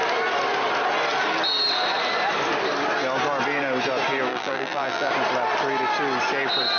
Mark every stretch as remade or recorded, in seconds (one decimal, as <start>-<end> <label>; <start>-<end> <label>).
0.0-4.3 recorded; 4.3-5.1 remade; 5.1-6.8 recorded